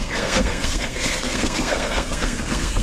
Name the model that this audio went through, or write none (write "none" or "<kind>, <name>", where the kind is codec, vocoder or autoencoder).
codec, SNAC